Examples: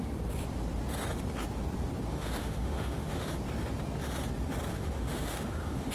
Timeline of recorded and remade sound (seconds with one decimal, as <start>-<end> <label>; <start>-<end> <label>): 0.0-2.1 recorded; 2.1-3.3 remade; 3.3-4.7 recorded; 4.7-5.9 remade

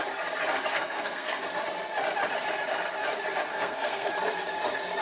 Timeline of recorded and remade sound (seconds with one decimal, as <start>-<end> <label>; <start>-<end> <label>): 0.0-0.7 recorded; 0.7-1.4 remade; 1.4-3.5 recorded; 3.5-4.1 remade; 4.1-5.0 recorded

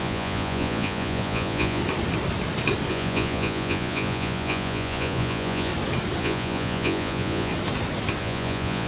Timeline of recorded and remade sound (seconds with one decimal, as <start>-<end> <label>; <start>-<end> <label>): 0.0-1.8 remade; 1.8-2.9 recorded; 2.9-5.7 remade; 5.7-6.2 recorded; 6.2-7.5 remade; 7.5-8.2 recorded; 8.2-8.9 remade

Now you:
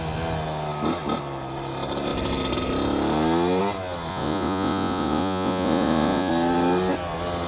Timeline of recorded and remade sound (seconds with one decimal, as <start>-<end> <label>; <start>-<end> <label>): 0.0-4.1 recorded; 4.1-6.3 remade; 6.3-7.5 recorded

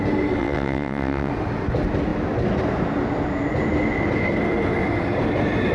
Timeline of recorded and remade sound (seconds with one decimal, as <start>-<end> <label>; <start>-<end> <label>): 0.0-0.4 recorded; 0.4-1.3 remade; 1.3-5.7 recorded

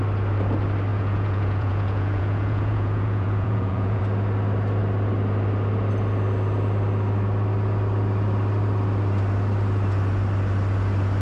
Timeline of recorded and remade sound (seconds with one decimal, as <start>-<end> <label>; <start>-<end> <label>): 0.0-0.9 recorded; 0.9-4.0 remade; 4.0-11.2 recorded

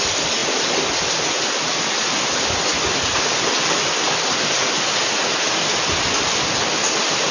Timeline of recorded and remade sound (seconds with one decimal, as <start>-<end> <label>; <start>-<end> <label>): 0.0-7.3 recorded

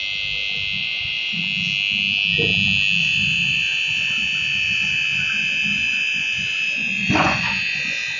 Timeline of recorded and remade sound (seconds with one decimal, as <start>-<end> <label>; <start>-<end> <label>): 0.0-0.8 recorded; 0.8-1.4 remade; 1.4-3.0 recorded; 3.0-8.2 remade